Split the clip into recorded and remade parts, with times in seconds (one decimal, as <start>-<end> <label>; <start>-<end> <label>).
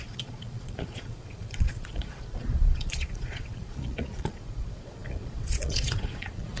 0.0-6.6 remade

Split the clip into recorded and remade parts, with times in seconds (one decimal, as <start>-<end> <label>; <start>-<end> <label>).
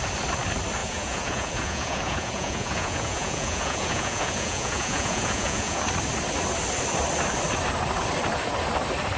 0.0-0.8 recorded; 0.8-5.8 remade; 5.8-9.2 recorded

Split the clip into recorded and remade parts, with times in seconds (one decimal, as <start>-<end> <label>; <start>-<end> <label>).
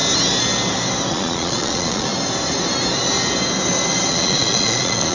0.0-1.1 recorded; 1.1-2.1 remade; 2.1-4.1 recorded; 4.1-5.1 remade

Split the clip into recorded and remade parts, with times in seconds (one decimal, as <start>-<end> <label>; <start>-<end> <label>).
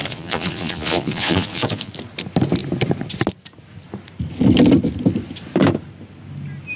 0.0-1.9 remade; 1.9-6.8 recorded